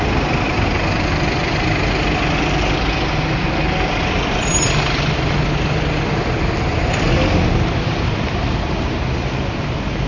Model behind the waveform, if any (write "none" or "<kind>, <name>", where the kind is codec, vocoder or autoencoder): none